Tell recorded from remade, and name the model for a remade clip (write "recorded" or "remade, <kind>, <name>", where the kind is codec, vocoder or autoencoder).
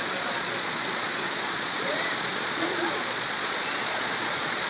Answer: remade, vocoder, Vocos